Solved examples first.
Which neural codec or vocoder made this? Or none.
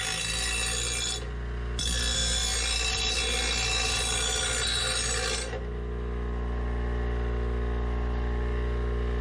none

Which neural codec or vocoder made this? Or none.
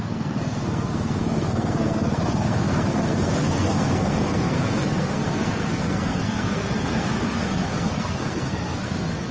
codec, SNAC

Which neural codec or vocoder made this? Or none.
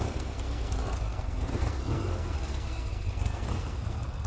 codec, SNAC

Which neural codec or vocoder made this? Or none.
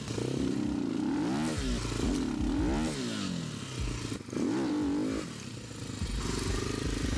none